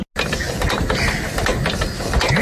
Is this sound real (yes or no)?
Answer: yes